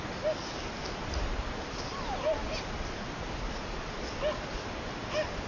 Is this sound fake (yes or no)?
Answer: no